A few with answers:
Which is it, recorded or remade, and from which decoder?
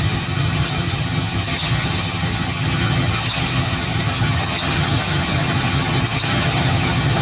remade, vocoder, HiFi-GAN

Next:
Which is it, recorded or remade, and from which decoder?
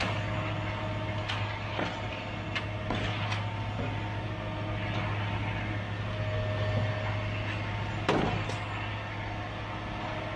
recorded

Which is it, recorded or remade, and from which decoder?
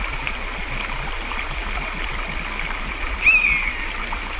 recorded